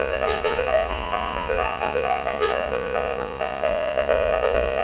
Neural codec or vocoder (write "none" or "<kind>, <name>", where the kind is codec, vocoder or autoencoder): vocoder, Vocos